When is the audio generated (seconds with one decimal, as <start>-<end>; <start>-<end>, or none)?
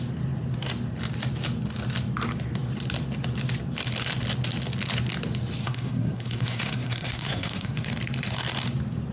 5.6-7.9